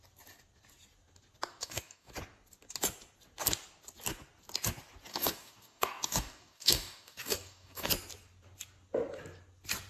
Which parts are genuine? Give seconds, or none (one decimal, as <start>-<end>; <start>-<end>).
0.0-1.5; 2.1-5.1; 7.9-9.9